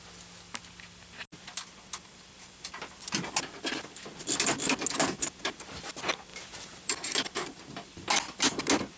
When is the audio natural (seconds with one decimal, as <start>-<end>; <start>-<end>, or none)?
0.0-9.0